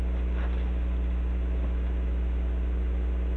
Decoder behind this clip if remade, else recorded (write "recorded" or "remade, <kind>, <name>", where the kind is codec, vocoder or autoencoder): recorded